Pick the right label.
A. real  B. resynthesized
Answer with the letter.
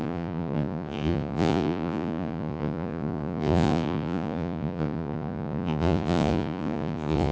B